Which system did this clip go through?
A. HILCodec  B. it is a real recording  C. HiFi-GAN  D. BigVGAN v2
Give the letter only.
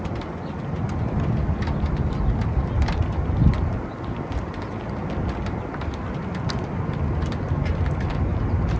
B